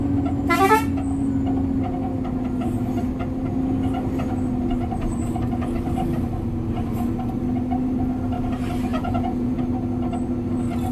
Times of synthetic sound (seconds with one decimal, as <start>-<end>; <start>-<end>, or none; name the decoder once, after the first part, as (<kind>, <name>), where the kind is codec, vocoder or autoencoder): 8.9-9.6 (vocoder, Vocos)